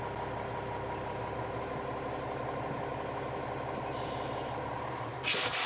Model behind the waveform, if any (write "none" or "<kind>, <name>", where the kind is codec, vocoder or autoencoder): none